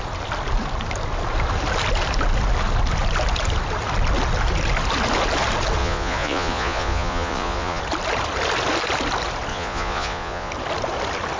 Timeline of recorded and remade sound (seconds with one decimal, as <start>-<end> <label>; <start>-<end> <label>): 0.0-5.8 recorded; 5.8-7.8 remade; 7.8-9.5 recorded; 9.5-10.5 remade; 10.5-11.4 recorded